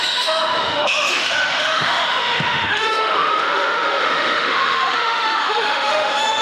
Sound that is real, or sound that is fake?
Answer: fake